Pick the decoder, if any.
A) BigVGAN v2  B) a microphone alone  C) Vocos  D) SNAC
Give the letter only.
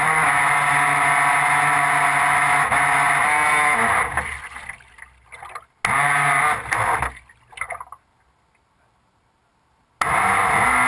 B